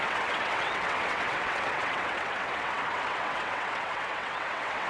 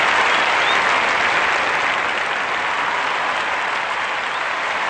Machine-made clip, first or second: first